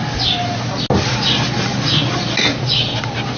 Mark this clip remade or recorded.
recorded